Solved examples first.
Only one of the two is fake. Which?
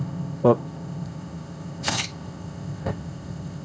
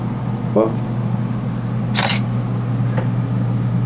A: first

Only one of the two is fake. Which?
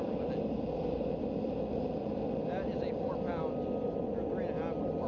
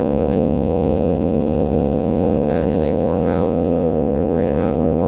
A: second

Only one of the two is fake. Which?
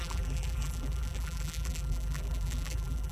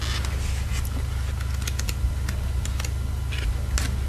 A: first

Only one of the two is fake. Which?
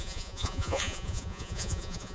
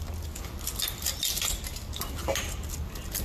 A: first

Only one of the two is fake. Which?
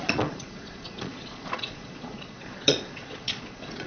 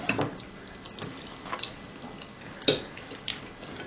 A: first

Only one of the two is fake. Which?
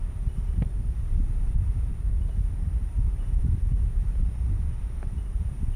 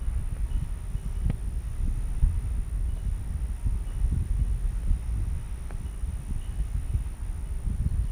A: first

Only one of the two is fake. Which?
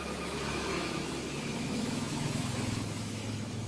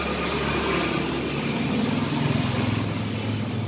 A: first